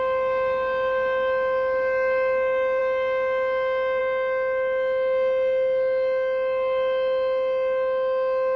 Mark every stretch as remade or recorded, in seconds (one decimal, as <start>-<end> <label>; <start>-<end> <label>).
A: 0.0-8.6 recorded